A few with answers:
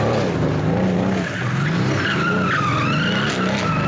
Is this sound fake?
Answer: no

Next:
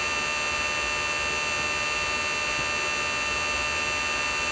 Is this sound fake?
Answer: no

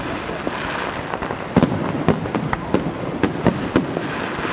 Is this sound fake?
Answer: no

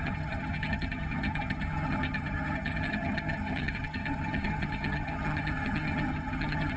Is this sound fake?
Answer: yes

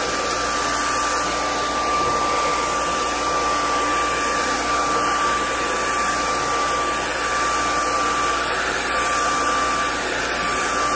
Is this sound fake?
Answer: no